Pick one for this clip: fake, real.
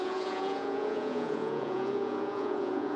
fake